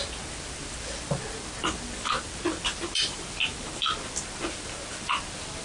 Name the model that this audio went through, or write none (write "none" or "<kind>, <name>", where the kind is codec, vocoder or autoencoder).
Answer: none